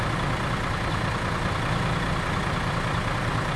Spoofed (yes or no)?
no